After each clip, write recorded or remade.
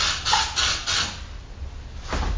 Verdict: recorded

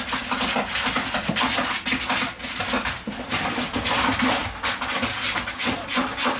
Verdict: recorded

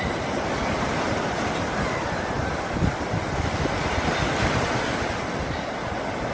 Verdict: recorded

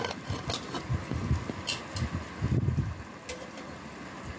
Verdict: recorded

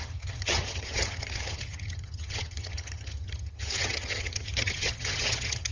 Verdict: remade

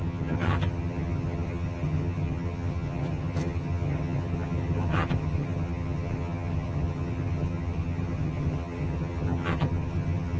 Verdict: remade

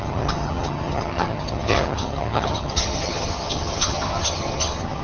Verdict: remade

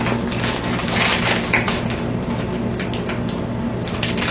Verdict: recorded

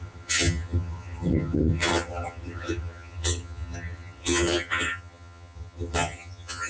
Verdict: remade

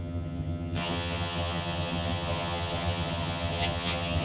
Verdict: remade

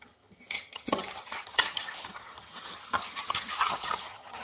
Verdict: remade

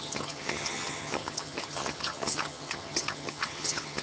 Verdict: remade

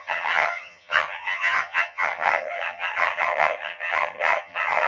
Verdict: remade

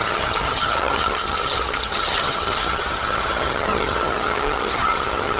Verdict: remade